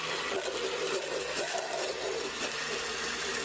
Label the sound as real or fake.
real